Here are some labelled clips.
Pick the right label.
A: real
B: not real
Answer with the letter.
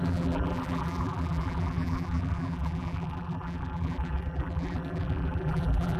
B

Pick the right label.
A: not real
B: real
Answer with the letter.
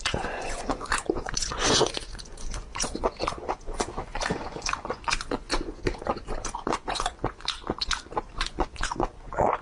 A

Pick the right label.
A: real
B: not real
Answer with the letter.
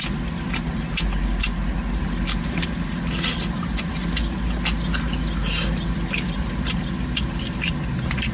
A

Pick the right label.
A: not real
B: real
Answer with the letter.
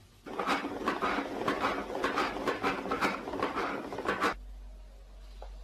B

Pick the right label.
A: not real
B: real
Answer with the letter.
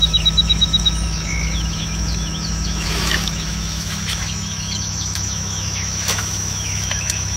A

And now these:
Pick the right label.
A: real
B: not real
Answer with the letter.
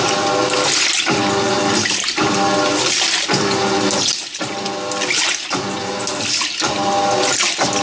A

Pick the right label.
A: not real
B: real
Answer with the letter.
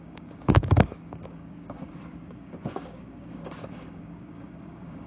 A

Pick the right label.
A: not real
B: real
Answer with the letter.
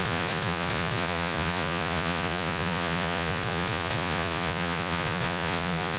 A